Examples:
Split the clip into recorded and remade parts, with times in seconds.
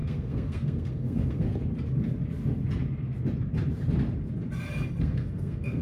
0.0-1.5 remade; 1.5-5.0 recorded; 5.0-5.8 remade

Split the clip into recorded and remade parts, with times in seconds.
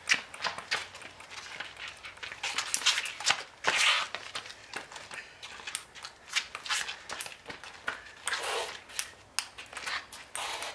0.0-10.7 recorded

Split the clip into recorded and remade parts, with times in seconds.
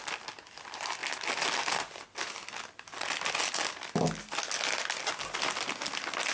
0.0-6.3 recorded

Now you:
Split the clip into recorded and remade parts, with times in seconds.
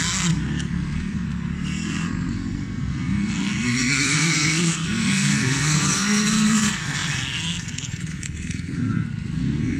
0.0-9.8 remade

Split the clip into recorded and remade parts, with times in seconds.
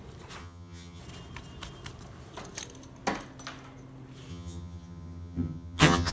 0.0-0.4 recorded; 0.4-1.0 remade; 1.0-4.3 recorded; 4.3-6.1 remade